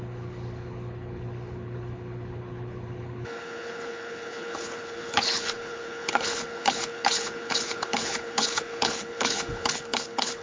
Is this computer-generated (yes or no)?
yes